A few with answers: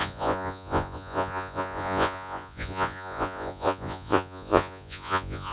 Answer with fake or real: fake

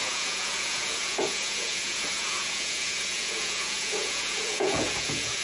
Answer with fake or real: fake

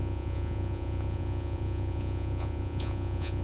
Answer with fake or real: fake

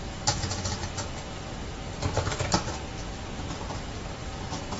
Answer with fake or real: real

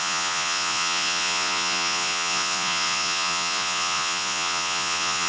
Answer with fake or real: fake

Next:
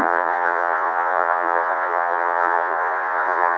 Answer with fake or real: fake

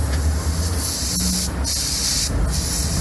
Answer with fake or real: real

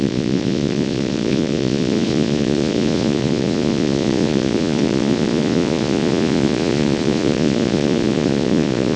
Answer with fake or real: fake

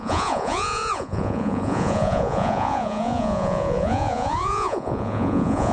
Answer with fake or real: fake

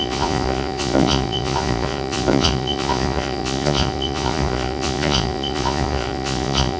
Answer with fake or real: fake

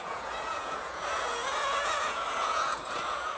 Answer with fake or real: fake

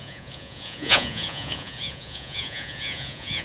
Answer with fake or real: fake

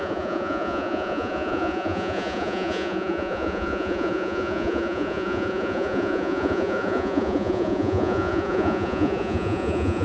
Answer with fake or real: fake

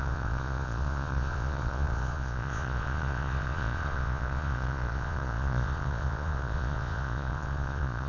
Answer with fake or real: fake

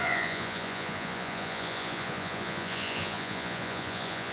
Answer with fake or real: fake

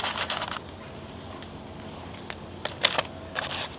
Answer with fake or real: real